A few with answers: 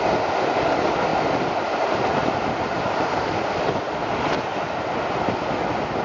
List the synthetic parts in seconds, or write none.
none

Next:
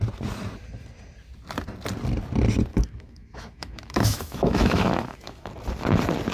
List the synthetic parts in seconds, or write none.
2.7-5.5 (autoencoder, DAC-VAE)

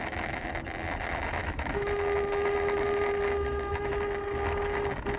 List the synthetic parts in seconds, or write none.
0.0-0.5 (autoencoder, DAC-VAE); 1.4-3.9

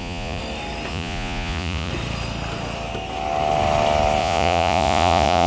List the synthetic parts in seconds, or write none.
0.0-0.4 (vocoder, Vocos); 0.9-1.9; 4.2-5.5

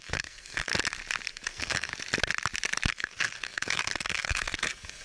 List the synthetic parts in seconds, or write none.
0.0-0.7 (codec, SNAC); 1.3-1.9; 2.9-5.0

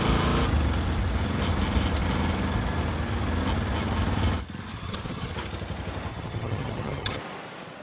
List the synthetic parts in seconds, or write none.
4.7-5.3 (vocoder, HiFi-GAN); 6.1-7.2